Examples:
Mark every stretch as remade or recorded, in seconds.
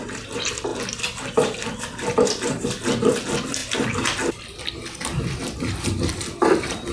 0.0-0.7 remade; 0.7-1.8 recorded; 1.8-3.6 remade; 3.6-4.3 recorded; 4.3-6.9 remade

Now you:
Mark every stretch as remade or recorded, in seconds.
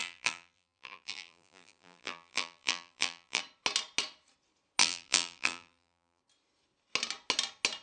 0.0-3.4 remade; 3.4-4.8 recorded; 4.8-6.2 remade; 6.2-7.8 recorded